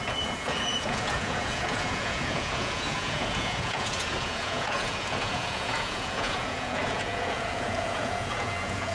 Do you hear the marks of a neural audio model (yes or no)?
yes